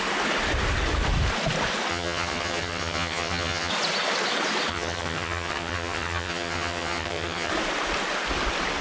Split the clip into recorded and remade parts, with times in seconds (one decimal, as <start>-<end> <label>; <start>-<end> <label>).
0.0-1.9 recorded; 1.9-3.7 remade; 3.7-4.7 recorded; 4.7-7.5 remade; 7.5-8.8 recorded

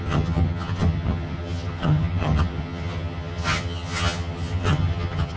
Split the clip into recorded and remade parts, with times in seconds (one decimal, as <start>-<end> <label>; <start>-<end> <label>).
0.0-5.4 remade